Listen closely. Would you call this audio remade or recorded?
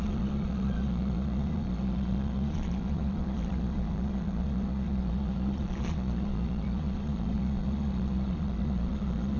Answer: remade